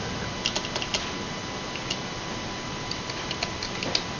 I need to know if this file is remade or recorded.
recorded